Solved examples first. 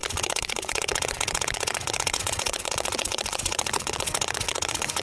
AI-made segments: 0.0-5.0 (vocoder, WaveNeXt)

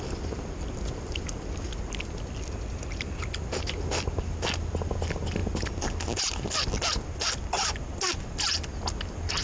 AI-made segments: none

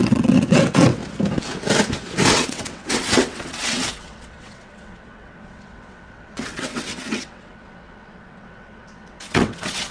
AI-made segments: 0.0-1.0 (vocoder, WaveNeXt); 2.3-9.9

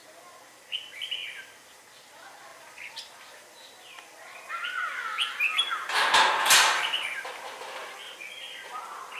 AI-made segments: none